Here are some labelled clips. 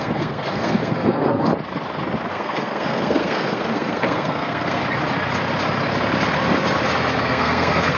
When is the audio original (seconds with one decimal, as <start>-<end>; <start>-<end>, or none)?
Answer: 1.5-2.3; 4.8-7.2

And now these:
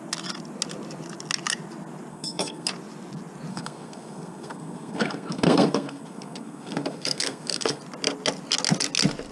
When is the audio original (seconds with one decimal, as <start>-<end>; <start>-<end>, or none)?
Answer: 0.0-2.1; 2.7-3.5; 7.8-9.3

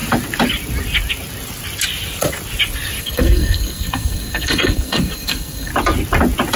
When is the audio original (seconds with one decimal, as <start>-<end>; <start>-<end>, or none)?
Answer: 0.0-3.0; 5.7-6.6